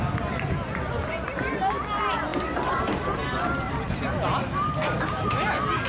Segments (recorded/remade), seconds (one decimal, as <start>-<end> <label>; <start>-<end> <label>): 0.0-5.9 recorded